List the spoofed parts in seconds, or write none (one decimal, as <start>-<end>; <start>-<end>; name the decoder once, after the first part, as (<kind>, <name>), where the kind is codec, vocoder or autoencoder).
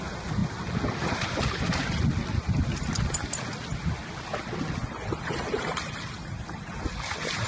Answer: none